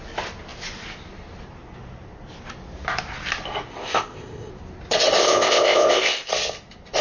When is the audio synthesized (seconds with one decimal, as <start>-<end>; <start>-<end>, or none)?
3.7-4.5; 5.2-6.3